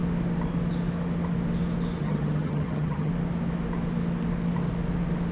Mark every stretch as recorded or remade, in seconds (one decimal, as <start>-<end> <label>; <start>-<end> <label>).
0.0-2.0 recorded; 2.0-3.1 remade; 3.1-5.3 recorded